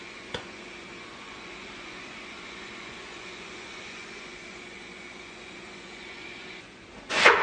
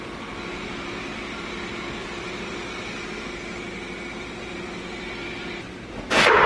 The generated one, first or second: first